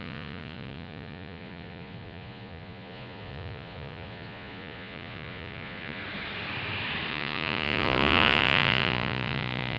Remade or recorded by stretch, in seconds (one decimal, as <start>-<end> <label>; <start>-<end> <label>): 0.0-6.0 remade; 6.0-7.1 recorded; 7.1-9.8 remade

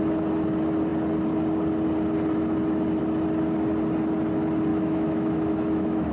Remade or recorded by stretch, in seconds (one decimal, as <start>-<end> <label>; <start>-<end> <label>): 0.0-4.7 recorded; 4.7-6.1 remade

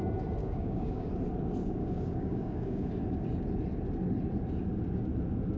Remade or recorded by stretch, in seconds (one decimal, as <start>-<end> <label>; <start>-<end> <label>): 0.0-0.4 recorded; 0.4-1.1 remade; 1.1-1.6 recorded; 1.6-2.9 remade; 2.9-5.6 recorded

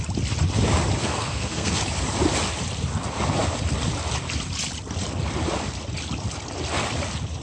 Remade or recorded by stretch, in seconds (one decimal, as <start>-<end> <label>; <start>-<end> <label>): 0.0-1.0 recorded; 1.0-1.8 remade; 1.8-7.4 recorded

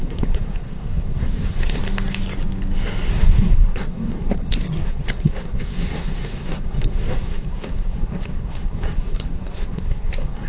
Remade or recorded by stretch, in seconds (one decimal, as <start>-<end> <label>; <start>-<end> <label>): 0.0-1.8 remade; 1.8-3.1 recorded; 3.1-10.5 remade

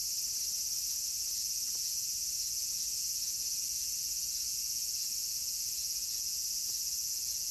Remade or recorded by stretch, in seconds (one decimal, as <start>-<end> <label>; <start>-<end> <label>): 0.0-0.9 recorded; 0.9-7.5 remade

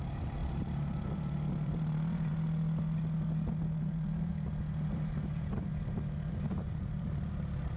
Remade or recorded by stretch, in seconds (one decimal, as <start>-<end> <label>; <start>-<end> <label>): 0.0-2.3 remade; 2.3-3.8 recorded; 3.8-4.3 remade; 4.3-4.9 recorded; 4.9-5.7 remade; 5.7-6.3 recorded; 6.3-7.8 remade

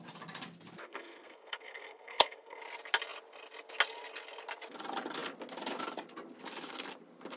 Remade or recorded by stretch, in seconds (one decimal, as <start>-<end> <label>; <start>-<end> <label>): 0.0-0.8 recorded; 0.8-2.6 remade; 2.6-7.4 recorded